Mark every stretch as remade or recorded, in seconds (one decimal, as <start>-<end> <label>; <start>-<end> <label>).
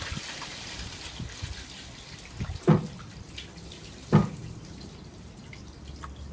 0.0-6.3 recorded